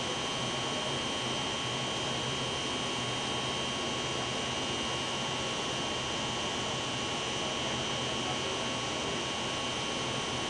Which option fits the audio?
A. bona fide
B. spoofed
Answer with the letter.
A